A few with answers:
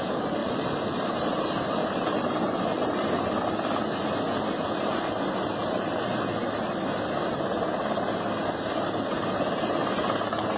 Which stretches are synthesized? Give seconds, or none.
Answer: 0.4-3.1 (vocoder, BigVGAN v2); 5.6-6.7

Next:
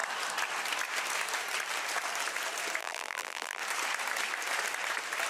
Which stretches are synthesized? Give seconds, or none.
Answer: 2.8-3.6 (vocoder, BigVGAN v2)

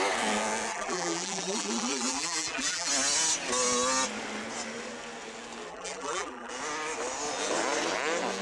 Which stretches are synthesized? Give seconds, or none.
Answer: 0.7-2.9 (vocoder, BigVGAN v2); 5.7-6.5

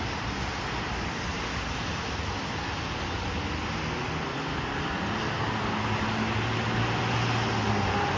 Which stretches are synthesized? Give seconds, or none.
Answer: none

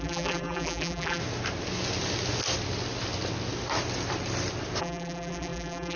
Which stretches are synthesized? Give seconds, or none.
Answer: 0.0-1.2 (vocoder, BigVGAN v2); 4.8-6.0

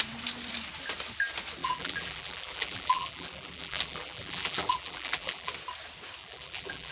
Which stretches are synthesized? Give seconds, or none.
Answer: 1.6-5.5 (vocoder, BigVGAN v2); 6.2-6.9

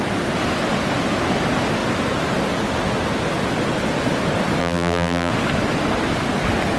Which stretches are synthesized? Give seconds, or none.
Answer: 4.6-5.3 (vocoder, BigVGAN v2)

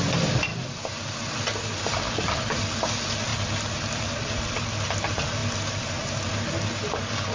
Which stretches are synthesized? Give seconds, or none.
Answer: 0.5-2.3 (vocoder, BigVGAN v2); 3.3-4.6; 5.4-6.0